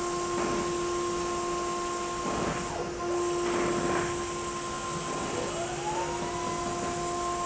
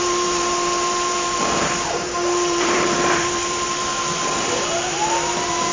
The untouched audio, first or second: first